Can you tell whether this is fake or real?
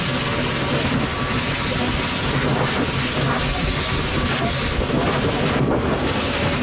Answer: real